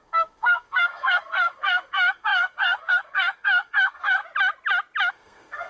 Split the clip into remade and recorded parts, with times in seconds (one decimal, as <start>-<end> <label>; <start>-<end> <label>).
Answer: 0.0-4.2 remade; 4.2-5.1 recorded; 5.1-5.7 remade